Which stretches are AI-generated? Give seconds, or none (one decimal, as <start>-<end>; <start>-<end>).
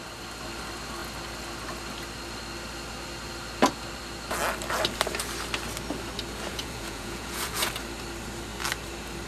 6.5-7.7